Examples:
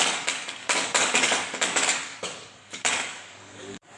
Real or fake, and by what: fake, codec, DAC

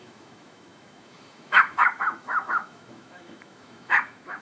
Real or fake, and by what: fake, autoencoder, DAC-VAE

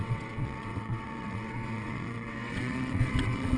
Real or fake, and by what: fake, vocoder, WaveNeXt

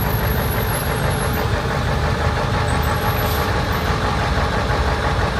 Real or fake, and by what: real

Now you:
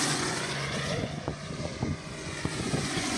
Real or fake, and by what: fake, vocoder, Vocos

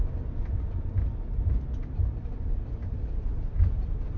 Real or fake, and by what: real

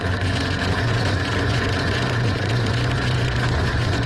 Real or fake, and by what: fake, vocoder, Vocos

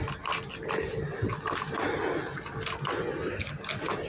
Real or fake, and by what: real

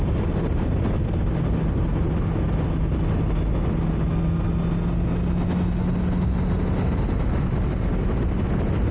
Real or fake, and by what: real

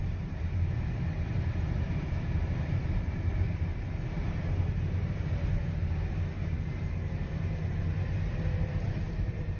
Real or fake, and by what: fake, vocoder, BigVGAN v2